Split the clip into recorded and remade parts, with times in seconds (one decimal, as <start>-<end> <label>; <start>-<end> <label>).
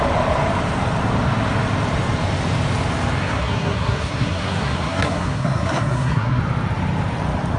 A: 0.0-3.2 recorded; 3.2-6.4 remade; 6.4-7.6 recorded